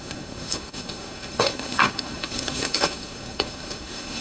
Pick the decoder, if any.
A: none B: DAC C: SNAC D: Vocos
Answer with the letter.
C